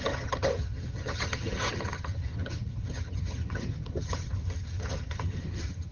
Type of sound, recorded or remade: remade